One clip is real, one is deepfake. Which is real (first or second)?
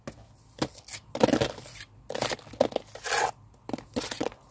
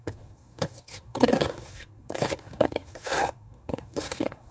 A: first